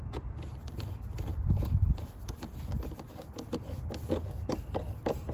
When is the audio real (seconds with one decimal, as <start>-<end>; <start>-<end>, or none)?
0.0-1.3; 2.0-5.3